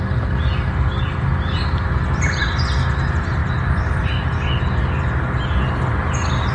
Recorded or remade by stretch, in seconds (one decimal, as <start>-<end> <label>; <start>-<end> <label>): 0.0-6.5 recorded